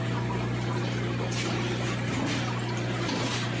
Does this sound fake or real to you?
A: real